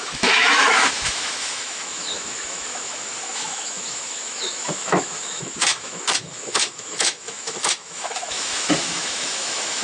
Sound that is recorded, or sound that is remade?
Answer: remade